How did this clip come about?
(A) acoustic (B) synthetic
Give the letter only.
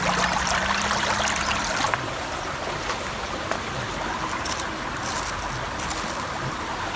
A